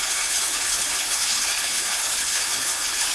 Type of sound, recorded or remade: remade